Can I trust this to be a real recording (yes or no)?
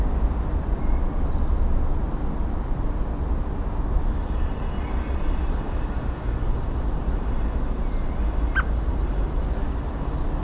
yes